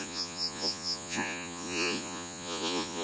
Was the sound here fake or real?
fake